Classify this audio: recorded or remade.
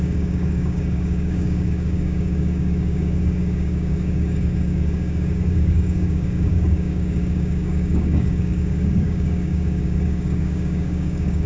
remade